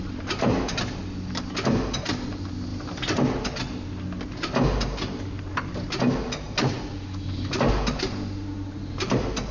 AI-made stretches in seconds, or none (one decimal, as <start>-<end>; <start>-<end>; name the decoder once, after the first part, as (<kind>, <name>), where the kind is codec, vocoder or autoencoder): none